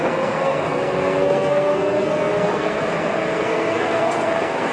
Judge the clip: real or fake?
fake